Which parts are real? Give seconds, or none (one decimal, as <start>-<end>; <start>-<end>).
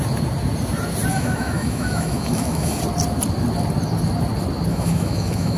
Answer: 0.0-1.1; 2.8-4.7